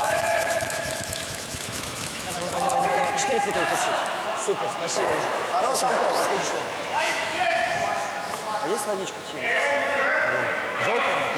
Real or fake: fake